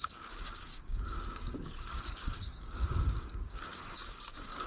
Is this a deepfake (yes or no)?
yes